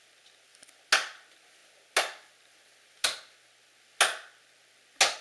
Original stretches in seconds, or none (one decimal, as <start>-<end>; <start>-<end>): 0.0-5.2